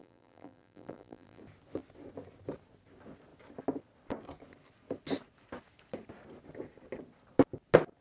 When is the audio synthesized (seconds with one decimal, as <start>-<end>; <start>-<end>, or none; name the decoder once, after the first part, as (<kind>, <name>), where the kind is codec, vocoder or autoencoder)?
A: 0.0-1.4 (vocoder, BigVGAN v2)